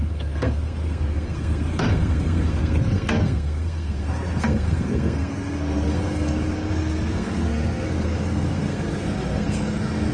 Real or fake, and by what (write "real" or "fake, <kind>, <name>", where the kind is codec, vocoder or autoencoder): fake, codec, SNAC